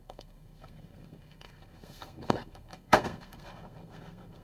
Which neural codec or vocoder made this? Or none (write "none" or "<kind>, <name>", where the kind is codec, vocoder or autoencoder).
codec, SNAC